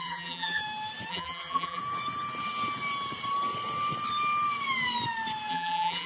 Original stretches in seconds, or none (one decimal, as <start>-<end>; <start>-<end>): 0.6-1.1; 1.8-5.5